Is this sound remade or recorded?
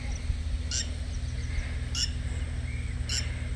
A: recorded